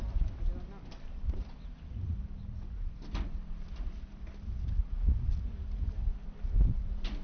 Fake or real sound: real